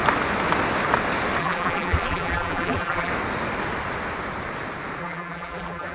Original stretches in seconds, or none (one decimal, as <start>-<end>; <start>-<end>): 0.0-1.4; 3.1-5.0